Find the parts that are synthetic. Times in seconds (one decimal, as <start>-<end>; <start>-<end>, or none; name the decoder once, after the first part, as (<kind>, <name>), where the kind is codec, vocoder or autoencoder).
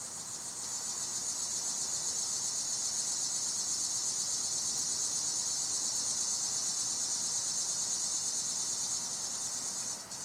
none